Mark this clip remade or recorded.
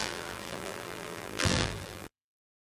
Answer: remade